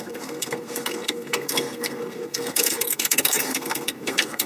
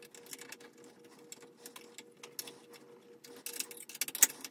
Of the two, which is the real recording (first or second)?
second